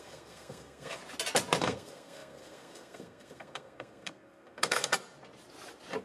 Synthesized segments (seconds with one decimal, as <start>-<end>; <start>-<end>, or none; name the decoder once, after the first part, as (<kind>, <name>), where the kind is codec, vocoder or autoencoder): 0.0-1.0 (codec, SNAC); 1.6-4.9